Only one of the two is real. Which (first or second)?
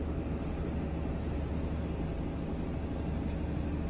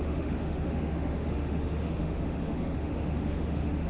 first